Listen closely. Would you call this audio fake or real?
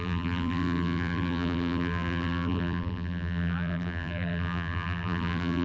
fake